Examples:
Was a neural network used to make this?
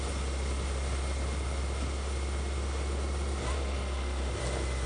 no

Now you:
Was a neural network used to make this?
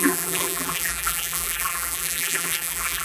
yes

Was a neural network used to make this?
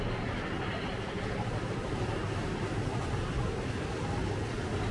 no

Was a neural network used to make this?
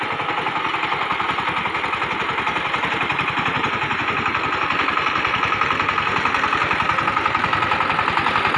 no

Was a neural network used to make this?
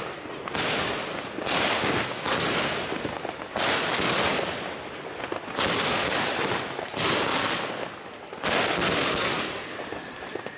no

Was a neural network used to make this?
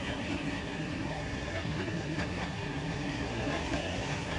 yes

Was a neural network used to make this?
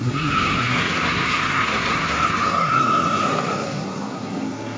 yes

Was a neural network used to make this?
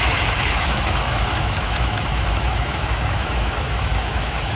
yes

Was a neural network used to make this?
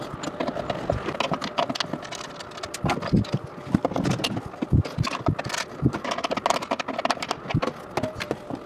no